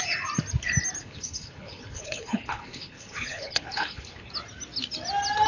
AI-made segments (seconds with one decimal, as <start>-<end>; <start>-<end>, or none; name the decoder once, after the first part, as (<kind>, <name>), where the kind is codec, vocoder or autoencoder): 1.0-4.3 (codec, HILCodec)